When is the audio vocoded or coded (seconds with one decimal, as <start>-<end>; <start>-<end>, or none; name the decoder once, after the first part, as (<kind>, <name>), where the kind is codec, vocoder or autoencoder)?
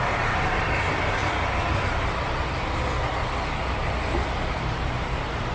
0.0-1.2 (vocoder, BigVGAN v2); 4.5-5.5